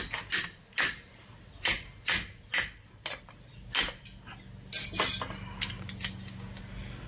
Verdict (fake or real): real